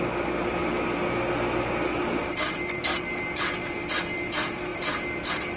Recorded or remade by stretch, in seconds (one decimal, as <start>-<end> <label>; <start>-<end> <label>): 0.0-5.6 recorded